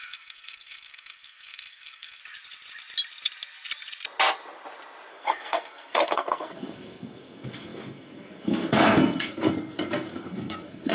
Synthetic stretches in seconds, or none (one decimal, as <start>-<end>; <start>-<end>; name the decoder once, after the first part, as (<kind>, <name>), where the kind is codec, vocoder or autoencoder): 0.0-2.2 (codec, SNAC); 5.1-10.9